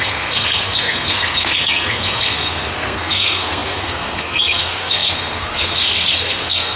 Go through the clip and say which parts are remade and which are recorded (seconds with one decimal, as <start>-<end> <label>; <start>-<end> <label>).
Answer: 0.0-6.8 remade